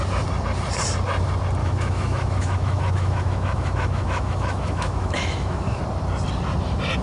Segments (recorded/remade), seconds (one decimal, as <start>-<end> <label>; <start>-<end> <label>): 0.0-1.6 recorded; 1.6-5.8 remade; 5.8-7.0 recorded